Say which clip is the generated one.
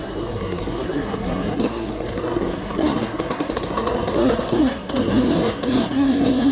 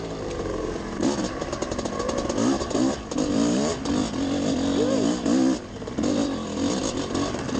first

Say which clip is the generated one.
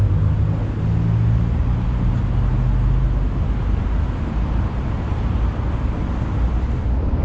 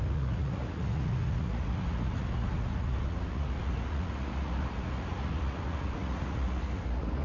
second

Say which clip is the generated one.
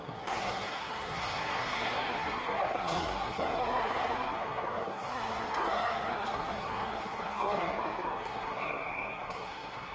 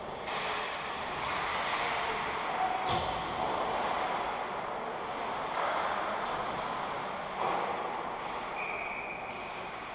first